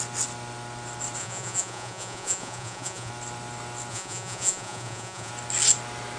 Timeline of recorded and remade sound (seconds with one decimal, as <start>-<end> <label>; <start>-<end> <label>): 0.0-1.2 recorded; 1.2-3.1 remade; 3.1-3.9 recorded; 3.9-5.3 remade; 5.3-6.2 recorded